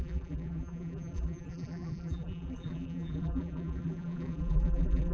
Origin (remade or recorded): remade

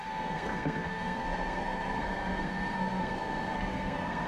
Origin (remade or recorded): remade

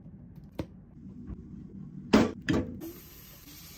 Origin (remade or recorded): remade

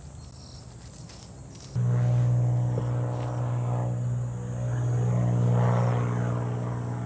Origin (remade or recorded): recorded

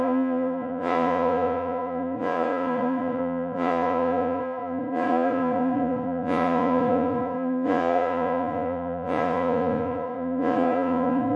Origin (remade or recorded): remade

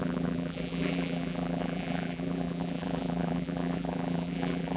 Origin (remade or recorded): remade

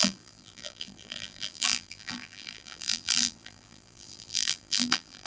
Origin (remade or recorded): remade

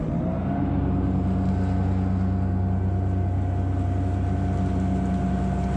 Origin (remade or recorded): recorded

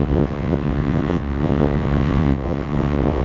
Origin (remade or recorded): remade